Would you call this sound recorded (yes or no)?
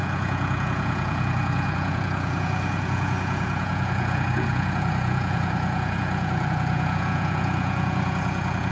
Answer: no